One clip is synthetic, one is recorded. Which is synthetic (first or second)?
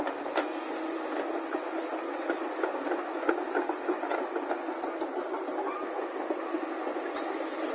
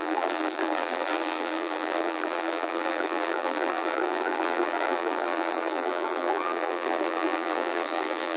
second